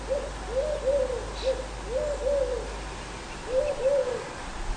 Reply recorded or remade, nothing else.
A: recorded